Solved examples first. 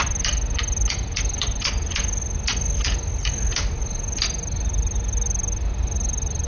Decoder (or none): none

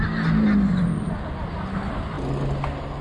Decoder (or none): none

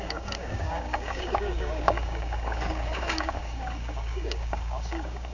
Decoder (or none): codec, DAC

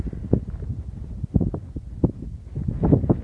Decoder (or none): none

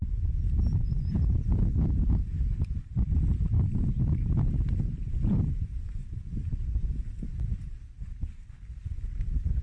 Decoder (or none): none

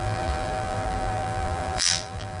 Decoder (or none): vocoder, BigVGAN v2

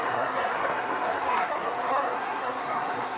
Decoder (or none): codec, SNAC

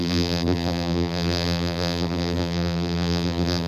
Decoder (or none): vocoder, BigVGAN v2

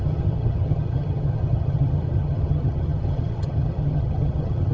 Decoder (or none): vocoder, HiFi-GAN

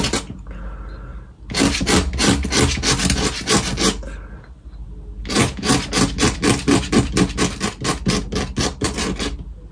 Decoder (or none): none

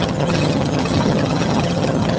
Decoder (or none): vocoder, HiFi-GAN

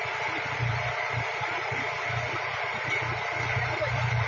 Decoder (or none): vocoder, BigVGAN v2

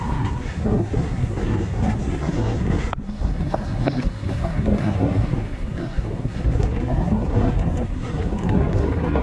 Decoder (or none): codec, SNAC